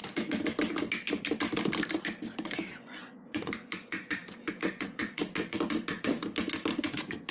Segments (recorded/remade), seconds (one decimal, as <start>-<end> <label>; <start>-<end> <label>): 0.0-2.4 recorded; 2.4-4.2 remade; 4.2-4.7 recorded; 4.7-5.2 remade; 5.2-6.8 recorded; 6.8-7.3 remade